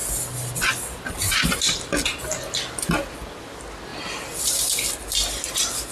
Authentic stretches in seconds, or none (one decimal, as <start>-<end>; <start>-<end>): 0.0-5.9